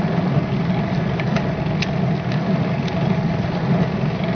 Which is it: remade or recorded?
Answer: recorded